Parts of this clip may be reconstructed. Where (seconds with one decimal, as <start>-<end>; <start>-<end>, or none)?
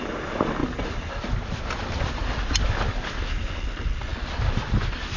none